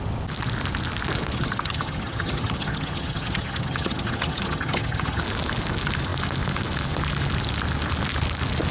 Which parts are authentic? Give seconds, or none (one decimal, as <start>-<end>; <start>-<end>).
0.0-1.3; 5.2-8.7